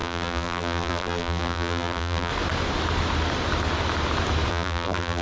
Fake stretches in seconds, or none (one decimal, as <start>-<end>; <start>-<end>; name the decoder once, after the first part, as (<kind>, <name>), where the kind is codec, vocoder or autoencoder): 0.0-2.3 (vocoder, BigVGAN v2); 4.5-5.2